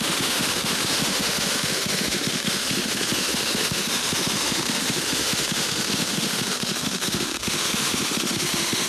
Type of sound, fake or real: fake